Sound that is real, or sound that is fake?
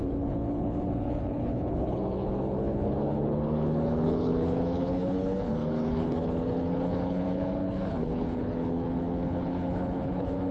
fake